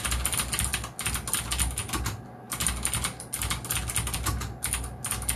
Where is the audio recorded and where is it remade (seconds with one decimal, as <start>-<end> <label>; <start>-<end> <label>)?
0.0-5.4 recorded